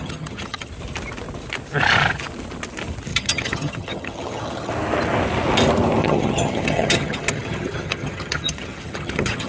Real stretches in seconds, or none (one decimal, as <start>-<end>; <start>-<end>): 0.7-3.1; 4.7-6.0